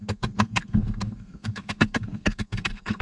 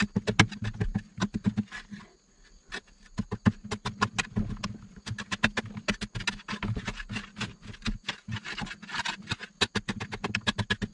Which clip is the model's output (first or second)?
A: first